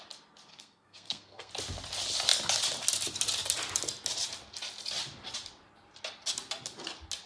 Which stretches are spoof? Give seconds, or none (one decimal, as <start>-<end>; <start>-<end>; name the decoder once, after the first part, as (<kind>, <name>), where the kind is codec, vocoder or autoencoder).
0.5-1.5 (codec, SNAC)